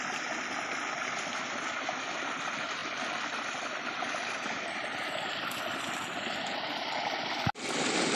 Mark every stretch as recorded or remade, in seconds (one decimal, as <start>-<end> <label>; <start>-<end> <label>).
0.0-8.2 recorded